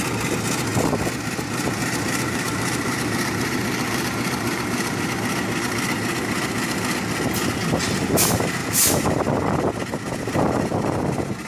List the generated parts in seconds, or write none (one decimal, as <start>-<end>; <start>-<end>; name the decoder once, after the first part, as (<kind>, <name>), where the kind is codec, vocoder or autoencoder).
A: 1.8-5.0 (vocoder, BigVGAN v2); 8.6-9.3